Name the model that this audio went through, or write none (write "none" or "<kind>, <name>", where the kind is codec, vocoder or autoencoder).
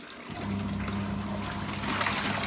none